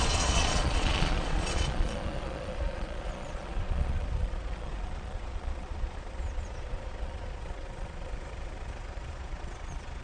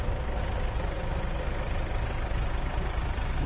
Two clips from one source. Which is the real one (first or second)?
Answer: second